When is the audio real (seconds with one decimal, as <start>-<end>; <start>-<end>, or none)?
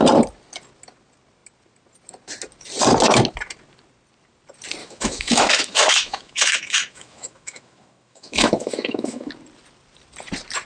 0.0-4.8; 9.3-10.7